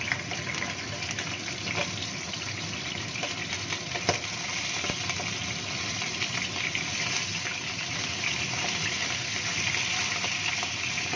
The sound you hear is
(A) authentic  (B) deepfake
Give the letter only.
A